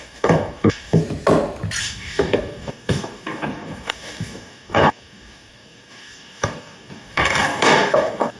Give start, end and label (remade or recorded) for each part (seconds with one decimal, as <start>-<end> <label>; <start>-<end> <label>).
0.0-1.0 remade; 1.0-1.8 recorded; 1.8-8.4 remade

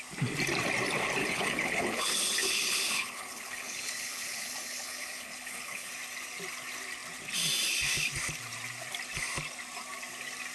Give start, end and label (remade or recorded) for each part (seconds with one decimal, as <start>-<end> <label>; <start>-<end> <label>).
0.0-1.2 recorded; 1.2-5.9 remade; 5.9-10.5 recorded

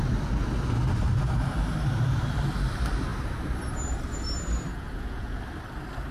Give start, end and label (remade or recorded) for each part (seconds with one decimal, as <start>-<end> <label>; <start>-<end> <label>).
0.0-4.7 recorded; 4.7-5.4 remade; 5.4-6.1 recorded

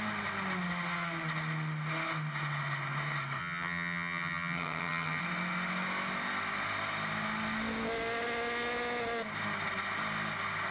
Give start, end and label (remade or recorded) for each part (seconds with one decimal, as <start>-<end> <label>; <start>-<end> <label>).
0.0-3.4 recorded; 3.4-5.2 remade; 5.2-10.7 recorded

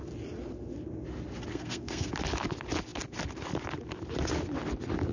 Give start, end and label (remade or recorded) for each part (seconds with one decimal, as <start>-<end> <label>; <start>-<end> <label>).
0.0-1.5 recorded; 1.5-2.1 remade; 2.1-5.1 recorded

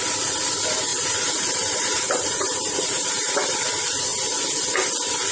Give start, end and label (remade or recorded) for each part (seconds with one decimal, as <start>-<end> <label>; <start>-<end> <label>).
0.0-0.9 recorded; 0.9-3.3 remade; 3.3-4.1 recorded; 4.1-4.6 remade; 4.6-5.3 recorded